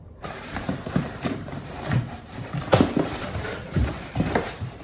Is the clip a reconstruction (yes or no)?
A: yes